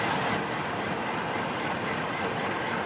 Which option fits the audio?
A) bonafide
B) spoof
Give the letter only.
A